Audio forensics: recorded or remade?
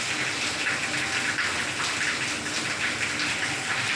recorded